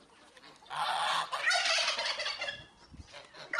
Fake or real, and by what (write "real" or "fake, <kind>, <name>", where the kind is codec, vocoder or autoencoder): real